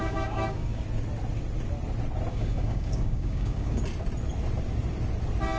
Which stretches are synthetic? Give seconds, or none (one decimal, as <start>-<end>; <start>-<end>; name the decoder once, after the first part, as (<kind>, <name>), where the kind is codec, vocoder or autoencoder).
0.0-0.8 (codec, DAC); 2.3-3.8